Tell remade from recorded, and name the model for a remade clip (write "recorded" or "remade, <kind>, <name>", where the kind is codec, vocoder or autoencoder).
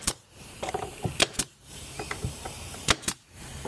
remade, vocoder, BigVGAN v2